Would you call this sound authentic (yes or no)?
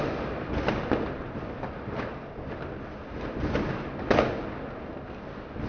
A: yes